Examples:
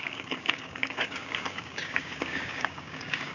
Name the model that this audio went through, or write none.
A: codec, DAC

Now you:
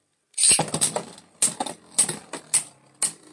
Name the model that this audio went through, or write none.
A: none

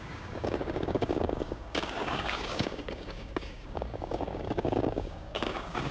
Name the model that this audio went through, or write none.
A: codec, DAC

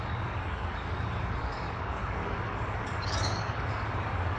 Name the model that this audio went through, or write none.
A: codec, DAC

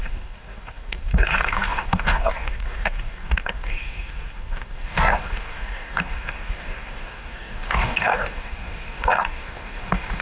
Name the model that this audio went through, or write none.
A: codec, DAC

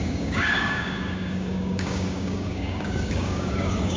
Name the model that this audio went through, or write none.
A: codec, DAC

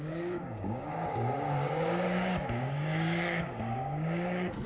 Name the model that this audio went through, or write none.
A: codec, DAC